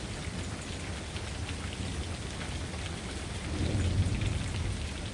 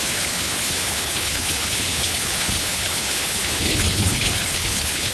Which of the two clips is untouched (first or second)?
first